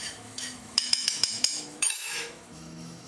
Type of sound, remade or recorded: remade